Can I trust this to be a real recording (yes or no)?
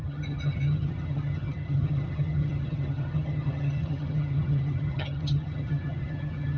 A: no